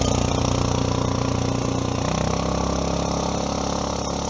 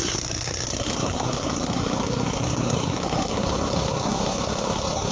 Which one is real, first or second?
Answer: first